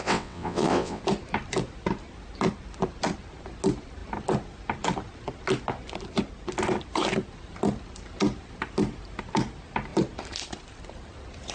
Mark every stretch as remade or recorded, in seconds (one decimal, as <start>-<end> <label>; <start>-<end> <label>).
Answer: 0.0-1.0 remade; 1.0-11.5 recorded